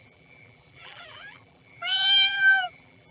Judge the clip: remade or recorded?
remade